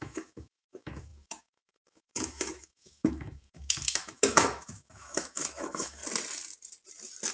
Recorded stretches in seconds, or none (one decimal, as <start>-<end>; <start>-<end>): 6.0-7.3